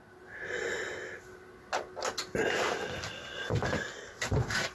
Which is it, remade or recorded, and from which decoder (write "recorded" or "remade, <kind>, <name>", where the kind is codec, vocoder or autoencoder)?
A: recorded